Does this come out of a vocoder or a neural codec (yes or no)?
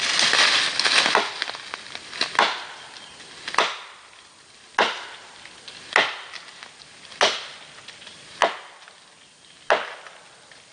no